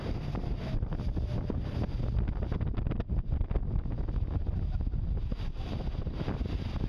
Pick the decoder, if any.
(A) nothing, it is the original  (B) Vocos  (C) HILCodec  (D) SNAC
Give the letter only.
A